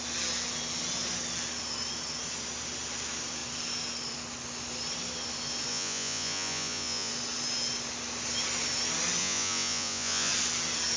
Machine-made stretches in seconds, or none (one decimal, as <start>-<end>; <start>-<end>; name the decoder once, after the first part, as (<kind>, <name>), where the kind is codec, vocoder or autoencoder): 5.7-7.1 (vocoder, Vocos); 9.2-10.3

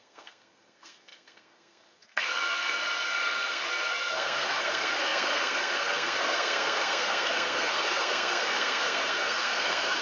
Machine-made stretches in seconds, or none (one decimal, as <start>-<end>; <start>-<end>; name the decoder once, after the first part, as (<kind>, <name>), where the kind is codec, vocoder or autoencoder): 0.0-10.0 (codec, SNAC)

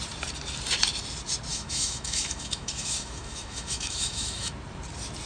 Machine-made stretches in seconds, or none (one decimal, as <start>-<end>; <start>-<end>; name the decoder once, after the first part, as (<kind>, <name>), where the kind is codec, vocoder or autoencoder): 1.5-4.5 (autoencoder, DAC-VAE)